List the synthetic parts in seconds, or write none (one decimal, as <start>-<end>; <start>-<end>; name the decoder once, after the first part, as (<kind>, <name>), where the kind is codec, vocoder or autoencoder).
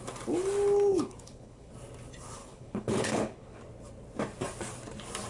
0.9-1.7 (codec, HILCodec); 2.4-3.6